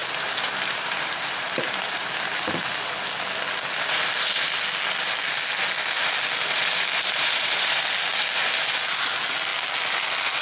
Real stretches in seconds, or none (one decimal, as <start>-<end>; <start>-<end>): 2.9-6.5; 7.8-10.4